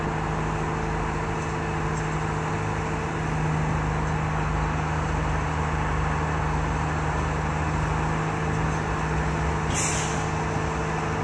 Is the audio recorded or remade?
recorded